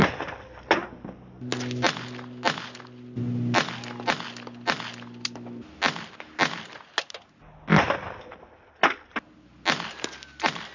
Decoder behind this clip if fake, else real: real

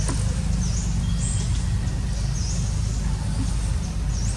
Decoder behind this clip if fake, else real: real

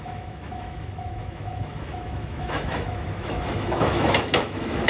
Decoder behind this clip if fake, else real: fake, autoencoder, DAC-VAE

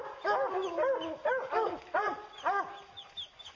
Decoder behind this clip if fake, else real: real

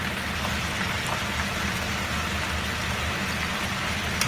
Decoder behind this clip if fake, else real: real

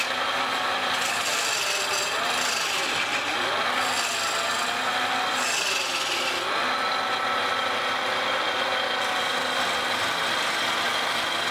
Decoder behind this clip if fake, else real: real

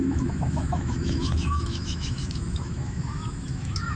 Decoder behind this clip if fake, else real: fake, autoencoder, DAC-VAE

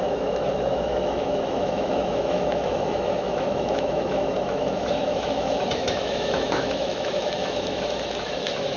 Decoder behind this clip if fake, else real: fake, autoencoder, DAC-VAE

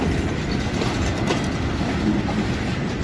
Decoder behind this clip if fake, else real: real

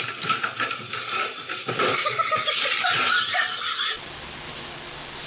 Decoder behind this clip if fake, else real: real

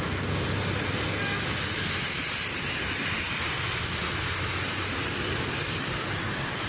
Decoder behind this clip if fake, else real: real